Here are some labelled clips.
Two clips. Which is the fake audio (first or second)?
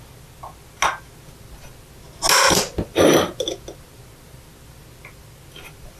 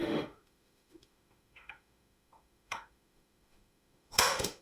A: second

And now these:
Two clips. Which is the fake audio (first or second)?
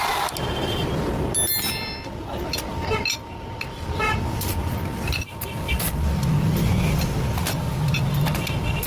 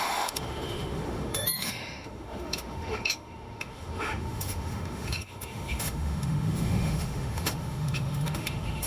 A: second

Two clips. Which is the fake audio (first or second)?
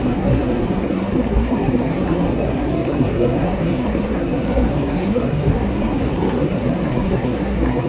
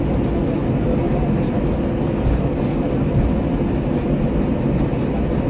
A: first